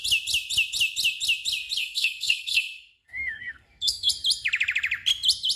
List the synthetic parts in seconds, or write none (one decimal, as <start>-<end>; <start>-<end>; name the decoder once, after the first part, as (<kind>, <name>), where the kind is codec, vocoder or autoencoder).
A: 1.8-4.1 (codec, SNAC)

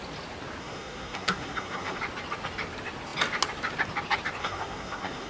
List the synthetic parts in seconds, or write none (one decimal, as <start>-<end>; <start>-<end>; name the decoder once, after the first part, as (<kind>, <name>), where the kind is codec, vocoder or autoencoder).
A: 0.6-2.0 (codec, SNAC); 4.4-5.3

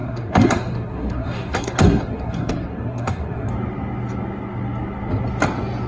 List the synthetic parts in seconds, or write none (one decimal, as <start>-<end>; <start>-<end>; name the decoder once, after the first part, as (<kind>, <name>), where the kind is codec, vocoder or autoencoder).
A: 0.0-3.5 (codec, SNAC)

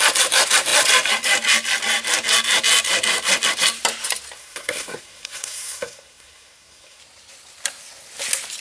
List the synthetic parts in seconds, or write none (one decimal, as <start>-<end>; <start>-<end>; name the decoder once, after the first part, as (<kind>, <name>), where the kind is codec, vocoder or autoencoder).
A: 4.4-7.0 (codec, SNAC)